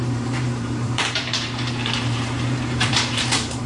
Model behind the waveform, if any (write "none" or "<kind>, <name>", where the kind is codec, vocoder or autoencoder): vocoder, BigVGAN v2